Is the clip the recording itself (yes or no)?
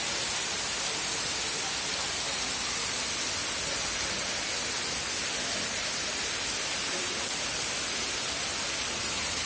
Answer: yes